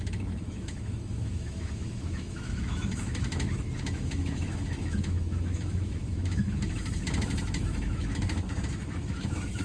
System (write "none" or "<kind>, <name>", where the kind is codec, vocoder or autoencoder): autoencoder, DAC-VAE